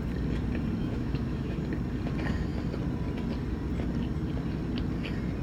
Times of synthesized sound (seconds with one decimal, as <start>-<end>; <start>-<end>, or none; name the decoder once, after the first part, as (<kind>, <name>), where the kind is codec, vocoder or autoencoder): 0.8-1.7 (autoencoder, DAC-VAE)